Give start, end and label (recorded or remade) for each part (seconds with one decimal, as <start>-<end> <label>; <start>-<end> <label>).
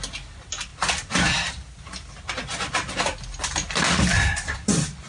0.0-5.1 recorded